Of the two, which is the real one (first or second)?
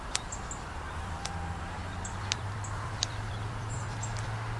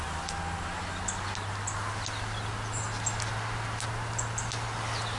second